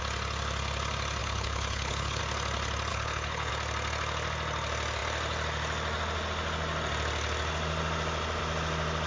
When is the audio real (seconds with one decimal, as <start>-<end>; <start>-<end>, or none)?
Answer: 0.0-1.2; 2.2-2.9; 3.5-9.1